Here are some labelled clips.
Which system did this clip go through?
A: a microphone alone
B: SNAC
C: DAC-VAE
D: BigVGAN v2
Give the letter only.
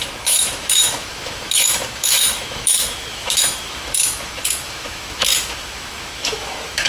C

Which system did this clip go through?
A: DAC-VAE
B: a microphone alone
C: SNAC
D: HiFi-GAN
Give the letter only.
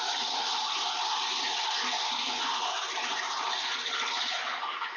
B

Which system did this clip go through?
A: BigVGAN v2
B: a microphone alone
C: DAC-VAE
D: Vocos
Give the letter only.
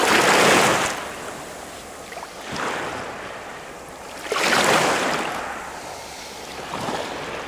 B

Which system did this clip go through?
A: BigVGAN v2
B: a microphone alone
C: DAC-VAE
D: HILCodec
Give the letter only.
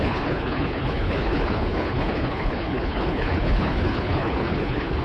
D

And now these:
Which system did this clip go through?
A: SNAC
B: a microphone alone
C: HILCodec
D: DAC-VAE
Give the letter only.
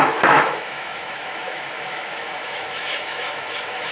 D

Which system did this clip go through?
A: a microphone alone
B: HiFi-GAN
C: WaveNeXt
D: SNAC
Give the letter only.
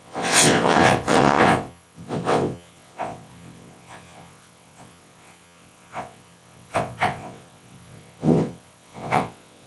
C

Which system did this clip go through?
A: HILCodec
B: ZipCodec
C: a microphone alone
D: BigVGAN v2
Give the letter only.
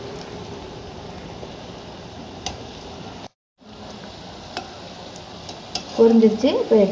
C